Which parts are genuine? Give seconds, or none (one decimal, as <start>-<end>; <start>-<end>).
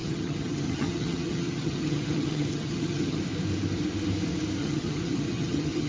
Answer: 3.2-4.6